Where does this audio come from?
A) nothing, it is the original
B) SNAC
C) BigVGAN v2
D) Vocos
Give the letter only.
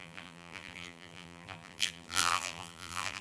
C